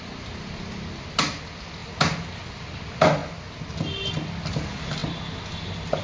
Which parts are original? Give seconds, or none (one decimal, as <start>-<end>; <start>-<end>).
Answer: 0.0-6.0